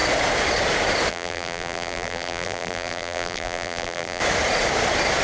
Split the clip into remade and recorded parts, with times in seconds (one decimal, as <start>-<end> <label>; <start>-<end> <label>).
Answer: 0.0-1.1 recorded; 1.1-4.2 remade; 4.2-5.2 recorded